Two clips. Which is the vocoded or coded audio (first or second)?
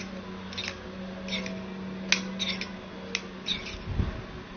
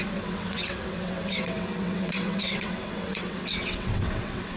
second